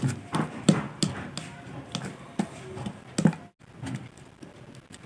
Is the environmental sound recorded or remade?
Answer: recorded